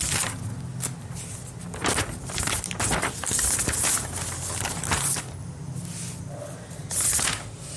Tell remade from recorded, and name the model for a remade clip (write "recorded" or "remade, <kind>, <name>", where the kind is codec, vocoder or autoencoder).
recorded